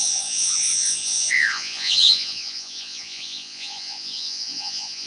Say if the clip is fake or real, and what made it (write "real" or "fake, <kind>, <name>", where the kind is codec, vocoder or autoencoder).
fake, vocoder, Vocos